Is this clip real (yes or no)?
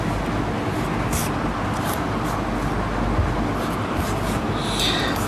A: yes